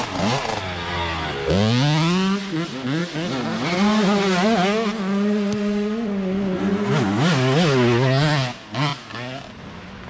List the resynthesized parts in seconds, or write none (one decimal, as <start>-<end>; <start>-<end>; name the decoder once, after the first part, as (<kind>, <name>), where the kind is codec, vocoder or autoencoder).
none